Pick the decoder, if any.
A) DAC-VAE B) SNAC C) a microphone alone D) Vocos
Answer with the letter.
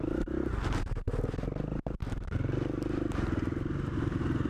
C